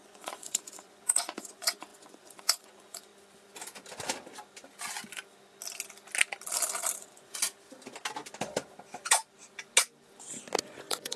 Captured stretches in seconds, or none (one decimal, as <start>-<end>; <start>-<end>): 3.1-7.0; 7.4-10.6